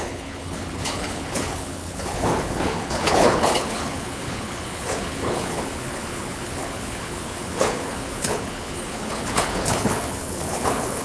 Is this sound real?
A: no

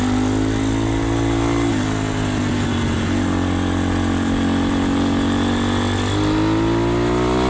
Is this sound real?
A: yes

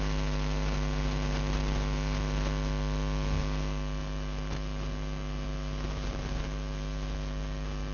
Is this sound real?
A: yes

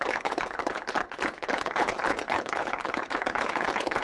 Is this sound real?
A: no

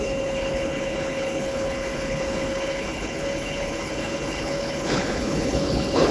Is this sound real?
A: no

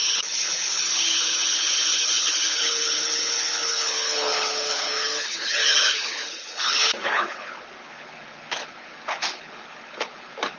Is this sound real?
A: no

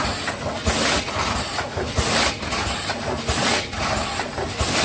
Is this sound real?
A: yes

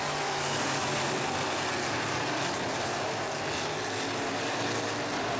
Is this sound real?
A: yes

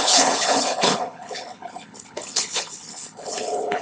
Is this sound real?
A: no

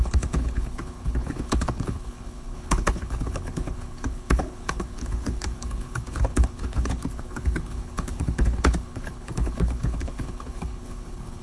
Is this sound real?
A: no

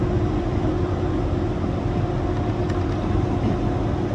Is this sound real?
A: yes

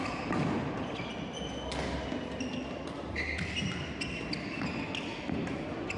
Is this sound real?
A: yes